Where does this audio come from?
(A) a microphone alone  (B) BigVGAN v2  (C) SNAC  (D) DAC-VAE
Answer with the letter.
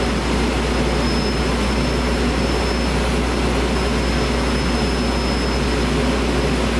A